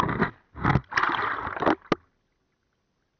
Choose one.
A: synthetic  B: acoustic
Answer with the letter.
B